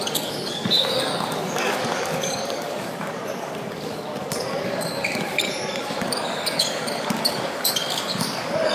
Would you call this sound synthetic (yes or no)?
yes